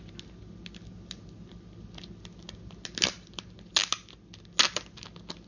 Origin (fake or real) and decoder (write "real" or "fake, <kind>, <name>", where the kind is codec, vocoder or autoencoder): real